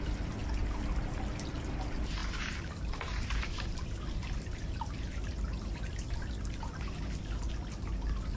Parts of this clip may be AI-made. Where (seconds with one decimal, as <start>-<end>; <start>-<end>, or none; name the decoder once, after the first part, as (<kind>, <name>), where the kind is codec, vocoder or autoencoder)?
none